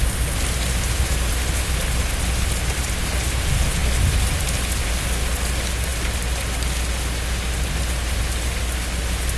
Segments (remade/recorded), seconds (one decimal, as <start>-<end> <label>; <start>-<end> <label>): 0.0-9.4 recorded